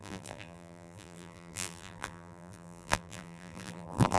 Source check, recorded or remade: remade